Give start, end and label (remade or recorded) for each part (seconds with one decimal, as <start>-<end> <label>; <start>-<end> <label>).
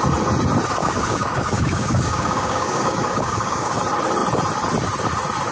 0.0-0.8 recorded; 0.8-3.8 remade; 3.8-5.5 recorded